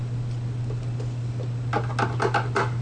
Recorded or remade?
recorded